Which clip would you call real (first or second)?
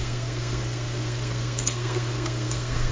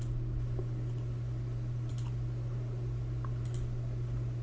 second